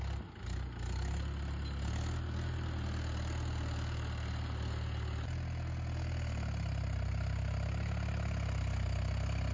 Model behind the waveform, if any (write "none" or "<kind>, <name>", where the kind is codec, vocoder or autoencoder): none